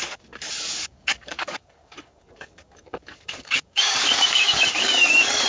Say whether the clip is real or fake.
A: fake